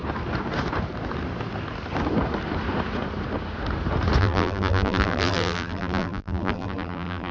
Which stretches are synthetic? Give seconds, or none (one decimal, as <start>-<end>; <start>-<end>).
4.2-7.3